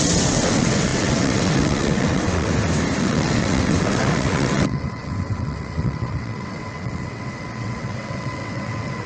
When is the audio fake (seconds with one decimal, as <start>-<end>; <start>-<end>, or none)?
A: 0.0-2.5; 3.0-9.1